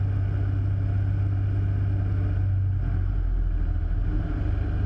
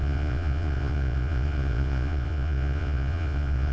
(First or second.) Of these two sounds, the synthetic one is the second